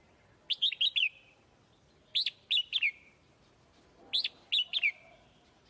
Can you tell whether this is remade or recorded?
recorded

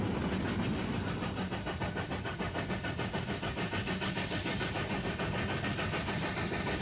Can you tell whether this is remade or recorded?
recorded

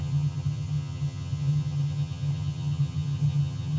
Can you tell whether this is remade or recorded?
remade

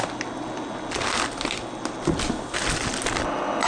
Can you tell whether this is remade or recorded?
recorded